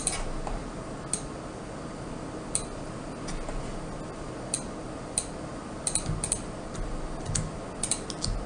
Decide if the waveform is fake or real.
real